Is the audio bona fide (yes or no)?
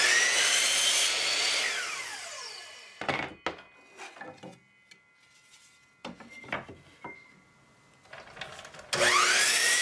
yes